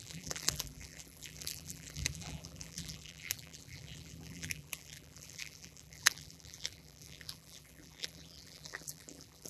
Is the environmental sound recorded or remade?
remade